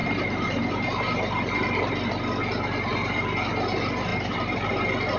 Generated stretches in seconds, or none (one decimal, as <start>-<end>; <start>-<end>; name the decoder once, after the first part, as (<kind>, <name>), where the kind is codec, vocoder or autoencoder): 0.0-1.9 (vocoder, BigVGAN v2); 4.1-4.7